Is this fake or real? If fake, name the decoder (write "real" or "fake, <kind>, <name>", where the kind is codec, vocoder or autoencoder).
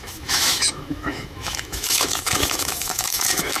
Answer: fake, autoencoder, DAC-VAE